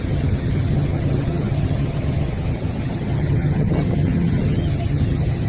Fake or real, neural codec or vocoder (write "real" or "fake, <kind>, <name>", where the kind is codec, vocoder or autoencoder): fake, vocoder, HiFi-GAN